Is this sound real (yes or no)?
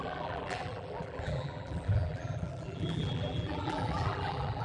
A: no